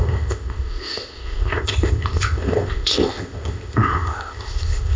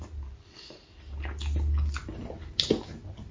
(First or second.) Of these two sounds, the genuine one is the second